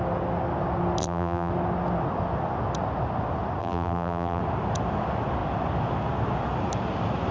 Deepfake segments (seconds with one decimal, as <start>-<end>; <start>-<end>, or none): 1.0-1.5; 3.6-4.4